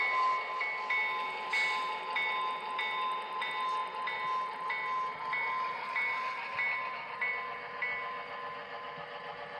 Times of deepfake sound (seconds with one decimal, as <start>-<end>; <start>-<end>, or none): none